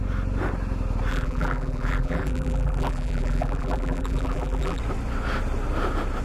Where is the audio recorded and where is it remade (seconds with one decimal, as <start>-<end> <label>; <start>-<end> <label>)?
0.0-1.1 recorded; 1.1-4.8 remade; 4.8-6.2 recorded